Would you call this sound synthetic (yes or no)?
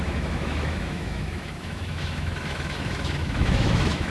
yes